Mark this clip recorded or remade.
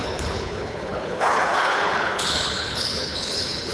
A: remade